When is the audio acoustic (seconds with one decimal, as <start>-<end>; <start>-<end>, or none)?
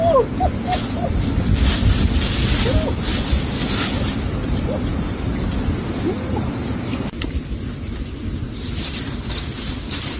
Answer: 0.0-10.2